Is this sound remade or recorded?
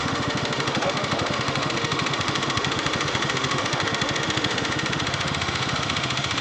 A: remade